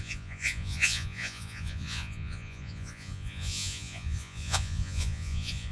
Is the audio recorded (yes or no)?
no